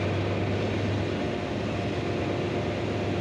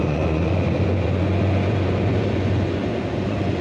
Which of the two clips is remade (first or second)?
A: second